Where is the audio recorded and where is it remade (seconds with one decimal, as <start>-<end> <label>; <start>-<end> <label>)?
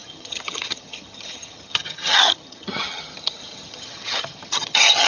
0.0-5.1 remade